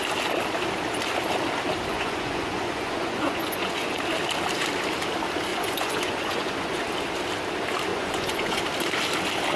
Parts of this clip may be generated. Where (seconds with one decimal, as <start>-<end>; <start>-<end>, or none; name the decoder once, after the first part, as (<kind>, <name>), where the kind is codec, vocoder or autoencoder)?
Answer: 1.9-4.0 (vocoder, Vocos); 5.5-6.8; 7.9-8.6

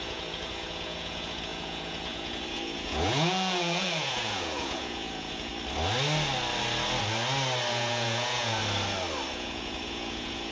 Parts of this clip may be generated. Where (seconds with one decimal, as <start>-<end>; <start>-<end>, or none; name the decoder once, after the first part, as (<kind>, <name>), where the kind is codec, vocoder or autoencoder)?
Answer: 0.0-5.5 (vocoder, Vocos); 7.7-8.6; 9.3-10.5

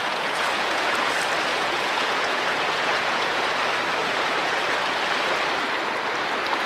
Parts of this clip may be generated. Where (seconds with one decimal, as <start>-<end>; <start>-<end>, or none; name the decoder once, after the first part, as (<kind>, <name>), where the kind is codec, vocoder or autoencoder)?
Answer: 0.0-1.1 (vocoder, Vocos); 1.5-3.5; 4.0-4.6

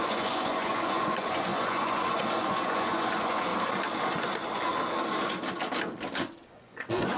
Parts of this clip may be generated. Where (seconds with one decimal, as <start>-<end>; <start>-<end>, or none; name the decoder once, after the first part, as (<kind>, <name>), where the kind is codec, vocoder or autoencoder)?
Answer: 0.0-3.5 (vocoder, Vocos); 6.5-7.2

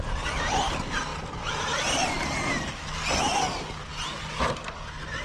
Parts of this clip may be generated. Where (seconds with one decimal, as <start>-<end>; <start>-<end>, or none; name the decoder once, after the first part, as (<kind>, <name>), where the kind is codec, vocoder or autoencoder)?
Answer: none

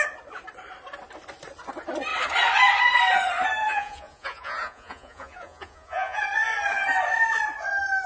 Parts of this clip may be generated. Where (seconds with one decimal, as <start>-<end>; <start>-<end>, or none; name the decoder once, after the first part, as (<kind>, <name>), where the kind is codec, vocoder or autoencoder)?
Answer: 3.6-6.2 (vocoder, Vocos)

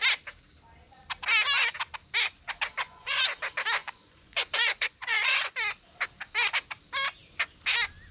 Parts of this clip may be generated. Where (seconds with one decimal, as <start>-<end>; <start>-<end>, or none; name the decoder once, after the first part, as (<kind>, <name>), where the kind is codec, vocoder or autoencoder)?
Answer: 2.8-3.3 (vocoder, Vocos); 3.8-5.5

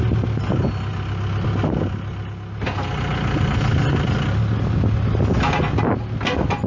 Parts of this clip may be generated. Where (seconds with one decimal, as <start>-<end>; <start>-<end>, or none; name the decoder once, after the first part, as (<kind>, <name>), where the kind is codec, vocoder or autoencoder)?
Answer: none